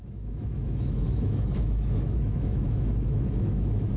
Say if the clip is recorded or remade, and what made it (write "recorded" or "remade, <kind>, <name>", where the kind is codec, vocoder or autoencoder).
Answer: remade, autoencoder, DAC-VAE